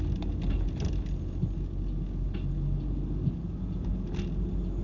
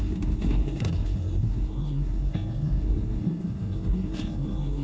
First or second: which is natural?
first